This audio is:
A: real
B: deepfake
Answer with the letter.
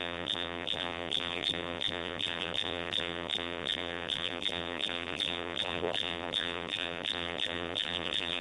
B